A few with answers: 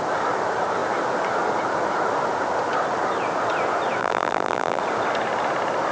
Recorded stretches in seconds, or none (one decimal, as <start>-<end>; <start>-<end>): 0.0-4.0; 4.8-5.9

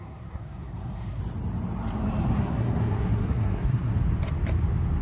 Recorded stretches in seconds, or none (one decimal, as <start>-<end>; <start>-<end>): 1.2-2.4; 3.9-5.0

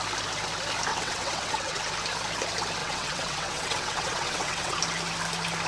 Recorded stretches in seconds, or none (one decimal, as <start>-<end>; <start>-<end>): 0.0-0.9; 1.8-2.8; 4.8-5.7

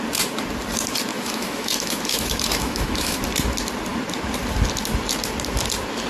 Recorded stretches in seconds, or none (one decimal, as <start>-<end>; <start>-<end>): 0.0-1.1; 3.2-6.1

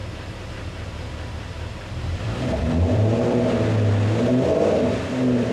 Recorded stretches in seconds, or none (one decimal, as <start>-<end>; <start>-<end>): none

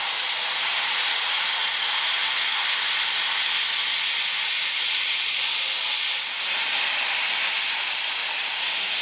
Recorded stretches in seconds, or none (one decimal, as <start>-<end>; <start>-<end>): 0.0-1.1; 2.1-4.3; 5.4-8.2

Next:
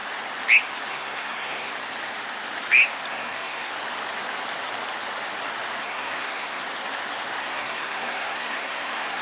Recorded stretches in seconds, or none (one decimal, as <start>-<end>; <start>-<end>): 0.0-0.9; 1.7-3.1; 3.7-5.8; 6.6-7.4